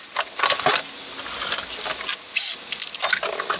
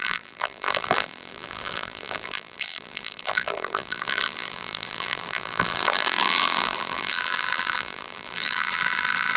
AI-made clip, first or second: second